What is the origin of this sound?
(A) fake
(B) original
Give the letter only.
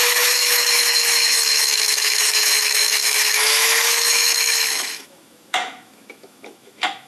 A